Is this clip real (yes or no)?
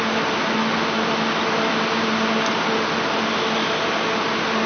yes